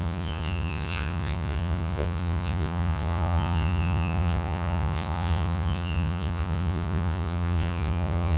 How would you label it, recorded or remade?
remade